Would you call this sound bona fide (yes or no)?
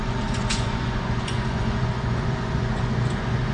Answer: no